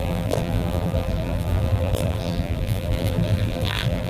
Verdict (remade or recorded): remade